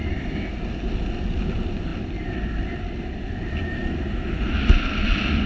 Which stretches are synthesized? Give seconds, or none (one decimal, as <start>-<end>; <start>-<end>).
0.0-0.5